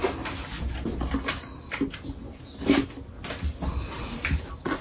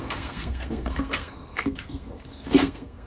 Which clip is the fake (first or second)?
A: second